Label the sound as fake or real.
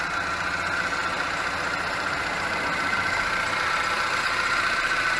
real